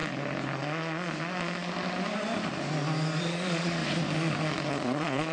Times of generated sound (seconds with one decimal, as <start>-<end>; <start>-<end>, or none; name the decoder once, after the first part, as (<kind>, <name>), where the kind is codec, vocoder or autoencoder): 3.2-3.8 (vocoder, Vocos); 4.7-5.3